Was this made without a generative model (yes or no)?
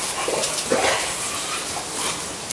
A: yes